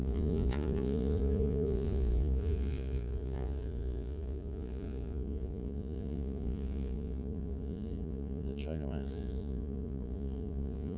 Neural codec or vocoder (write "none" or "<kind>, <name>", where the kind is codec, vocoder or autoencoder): vocoder, Vocos